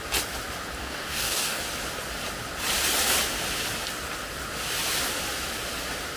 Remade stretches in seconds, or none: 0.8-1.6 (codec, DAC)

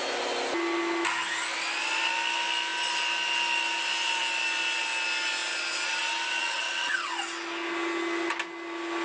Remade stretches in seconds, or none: 6.4-7.1 (vocoder, HiFi-GAN)

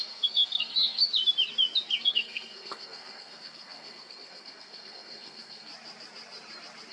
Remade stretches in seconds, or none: 0.0-1.0 (codec, SNAC); 2.0-5.7